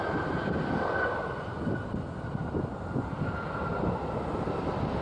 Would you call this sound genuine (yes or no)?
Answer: yes